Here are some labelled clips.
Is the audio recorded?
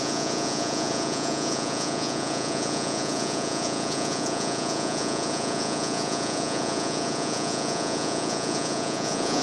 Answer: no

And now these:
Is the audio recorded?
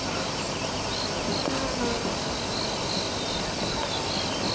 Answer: yes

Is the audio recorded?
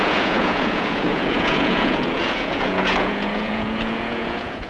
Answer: no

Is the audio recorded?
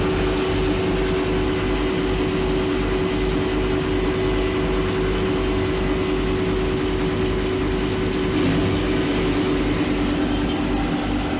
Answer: yes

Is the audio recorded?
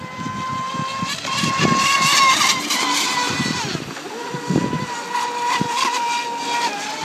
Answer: yes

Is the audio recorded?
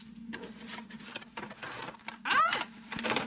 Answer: yes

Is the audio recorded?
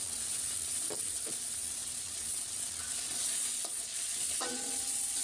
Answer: no